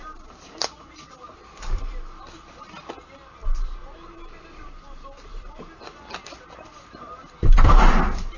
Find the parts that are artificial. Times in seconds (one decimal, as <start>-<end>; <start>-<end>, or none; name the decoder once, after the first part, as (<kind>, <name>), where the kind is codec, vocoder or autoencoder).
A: none